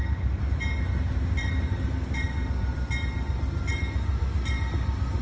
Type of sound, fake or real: real